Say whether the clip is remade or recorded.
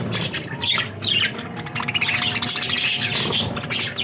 recorded